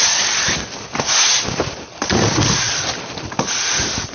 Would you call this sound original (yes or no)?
no